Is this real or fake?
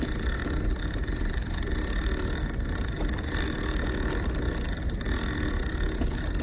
real